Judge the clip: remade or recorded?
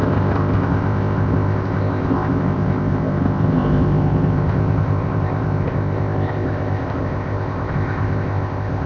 remade